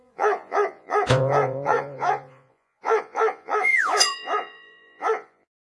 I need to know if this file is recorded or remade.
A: remade